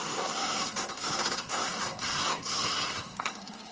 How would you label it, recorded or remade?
remade